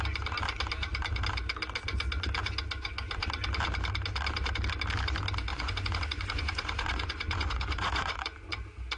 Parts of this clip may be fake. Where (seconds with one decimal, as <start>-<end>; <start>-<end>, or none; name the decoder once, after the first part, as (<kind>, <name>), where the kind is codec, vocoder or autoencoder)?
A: 5.5-8.5 (vocoder, Vocos)